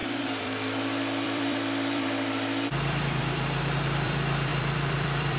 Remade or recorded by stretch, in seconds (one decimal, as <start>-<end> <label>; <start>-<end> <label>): 0.0-5.4 remade